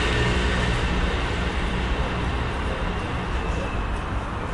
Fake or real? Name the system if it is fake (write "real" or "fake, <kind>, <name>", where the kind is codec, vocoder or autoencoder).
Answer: real